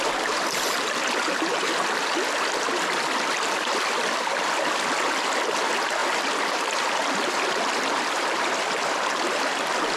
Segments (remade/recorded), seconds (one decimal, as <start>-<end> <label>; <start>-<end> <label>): 0.0-6.0 recorded; 6.0-6.9 remade; 6.9-10.0 recorded